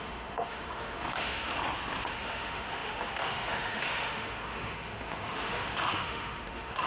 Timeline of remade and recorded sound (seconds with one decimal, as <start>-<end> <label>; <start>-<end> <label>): 0.0-1.6 remade; 1.6-2.1 recorded; 2.1-6.9 remade